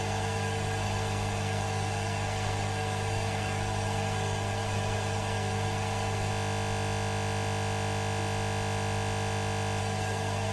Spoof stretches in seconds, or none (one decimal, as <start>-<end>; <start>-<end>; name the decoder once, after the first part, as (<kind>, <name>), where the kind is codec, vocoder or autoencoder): 0.0-6.3 (codec, SNAC); 9.8-10.5

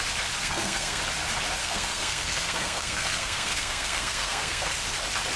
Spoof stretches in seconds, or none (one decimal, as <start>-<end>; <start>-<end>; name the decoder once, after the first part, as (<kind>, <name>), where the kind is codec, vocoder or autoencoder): 0.4-1.0 (codec, SNAC); 1.6-4.7

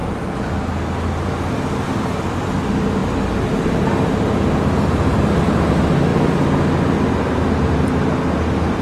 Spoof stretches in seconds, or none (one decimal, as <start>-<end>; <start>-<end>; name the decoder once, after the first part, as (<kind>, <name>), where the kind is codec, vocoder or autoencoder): none

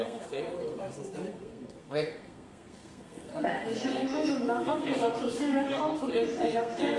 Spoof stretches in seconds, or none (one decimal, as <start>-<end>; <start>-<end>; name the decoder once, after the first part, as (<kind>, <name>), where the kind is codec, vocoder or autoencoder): 0.0-7.0 (codec, SNAC)

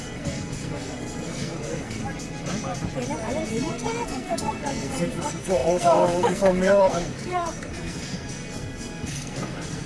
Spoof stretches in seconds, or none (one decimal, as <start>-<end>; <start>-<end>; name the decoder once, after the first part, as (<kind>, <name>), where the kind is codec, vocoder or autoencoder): 0.0-2.0 (codec, SNAC); 3.5-9.9

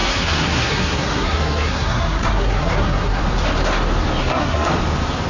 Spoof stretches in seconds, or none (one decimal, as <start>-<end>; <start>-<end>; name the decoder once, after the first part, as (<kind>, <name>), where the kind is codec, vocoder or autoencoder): 0.0-3.2 (codec, SNAC); 4.2-4.7

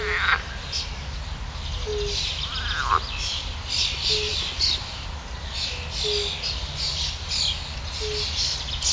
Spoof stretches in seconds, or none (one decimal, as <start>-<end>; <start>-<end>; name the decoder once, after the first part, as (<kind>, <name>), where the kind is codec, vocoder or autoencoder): none

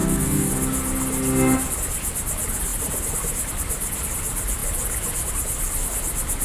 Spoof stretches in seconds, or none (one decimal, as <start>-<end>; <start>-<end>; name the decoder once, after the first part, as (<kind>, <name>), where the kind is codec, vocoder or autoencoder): 0.0-0.5 (codec, SNAC)